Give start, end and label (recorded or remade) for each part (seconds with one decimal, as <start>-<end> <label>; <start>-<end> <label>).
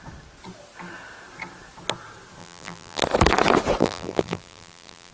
0.0-2.4 recorded; 2.4-3.0 remade; 3.0-3.8 recorded; 3.8-5.1 remade